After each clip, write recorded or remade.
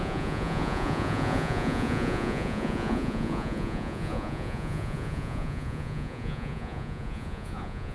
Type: remade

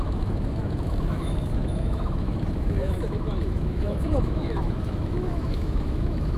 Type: remade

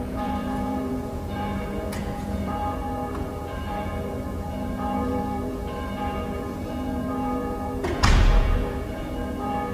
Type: remade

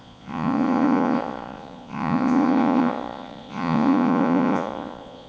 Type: remade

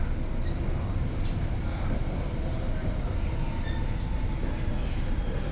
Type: recorded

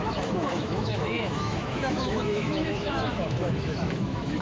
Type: remade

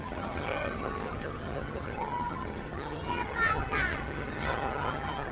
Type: remade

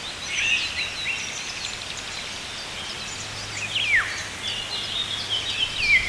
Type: recorded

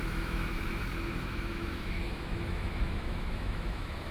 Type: remade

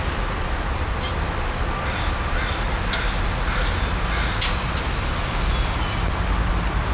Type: recorded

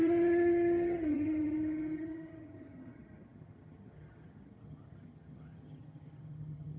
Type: remade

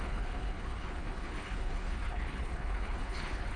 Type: remade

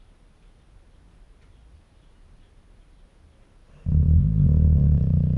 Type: recorded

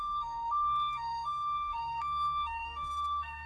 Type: remade